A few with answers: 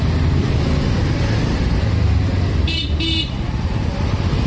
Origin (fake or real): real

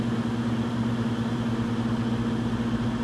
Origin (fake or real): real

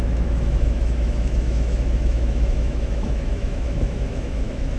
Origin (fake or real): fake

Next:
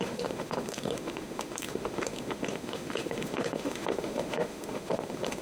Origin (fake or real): fake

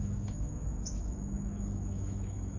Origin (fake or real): fake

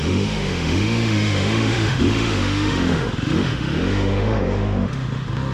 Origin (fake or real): fake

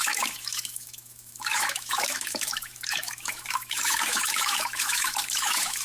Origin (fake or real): fake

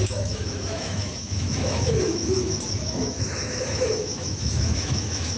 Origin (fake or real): fake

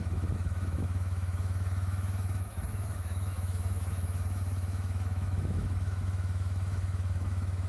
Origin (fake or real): fake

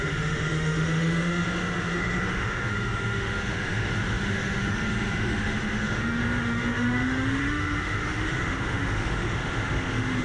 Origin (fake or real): fake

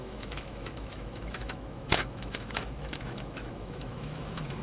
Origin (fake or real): fake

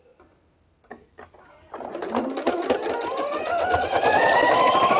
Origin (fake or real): real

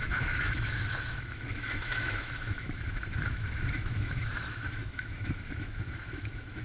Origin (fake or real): fake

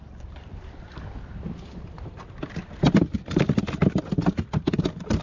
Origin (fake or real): real